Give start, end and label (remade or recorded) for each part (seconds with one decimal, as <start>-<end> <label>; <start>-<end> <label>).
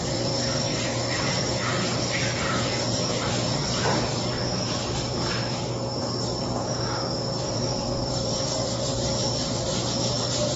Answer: 0.0-0.7 remade; 0.7-1.3 recorded; 1.3-10.6 remade